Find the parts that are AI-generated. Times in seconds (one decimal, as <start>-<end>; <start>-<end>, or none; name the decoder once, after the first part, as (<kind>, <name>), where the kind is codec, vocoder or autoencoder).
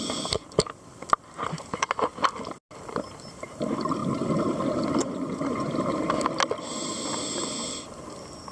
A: 5.0-5.7 (vocoder, Vocos)